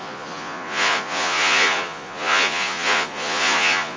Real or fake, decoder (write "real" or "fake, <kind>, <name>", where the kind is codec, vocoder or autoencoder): fake, vocoder, Vocos